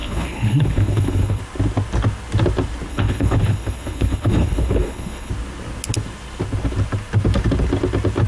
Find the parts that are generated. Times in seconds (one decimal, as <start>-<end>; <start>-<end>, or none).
0.0-1.4; 2.9-5.3